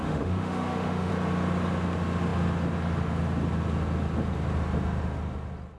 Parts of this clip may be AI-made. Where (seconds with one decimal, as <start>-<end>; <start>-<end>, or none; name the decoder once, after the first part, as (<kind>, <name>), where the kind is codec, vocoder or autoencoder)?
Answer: 0.0-1.1 (autoencoder, DAC-VAE)